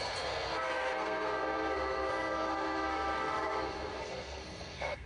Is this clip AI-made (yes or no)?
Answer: yes